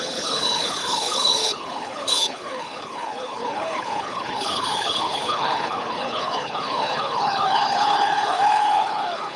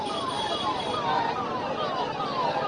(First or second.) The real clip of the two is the second